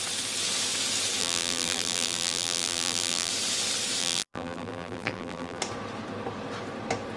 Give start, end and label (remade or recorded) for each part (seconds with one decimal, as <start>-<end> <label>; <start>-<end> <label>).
0.0-1.2 recorded; 1.2-3.3 remade; 3.3-4.0 recorded; 4.0-5.6 remade; 5.6-7.2 recorded